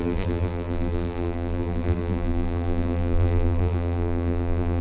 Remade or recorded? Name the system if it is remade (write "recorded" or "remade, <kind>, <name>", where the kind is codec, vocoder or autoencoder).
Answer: remade, vocoder, BigVGAN v2